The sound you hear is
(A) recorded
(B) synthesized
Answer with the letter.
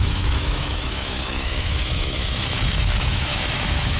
B